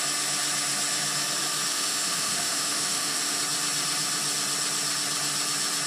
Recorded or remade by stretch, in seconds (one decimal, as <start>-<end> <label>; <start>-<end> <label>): 0.0-1.7 recorded; 1.7-3.4 remade; 3.4-5.9 recorded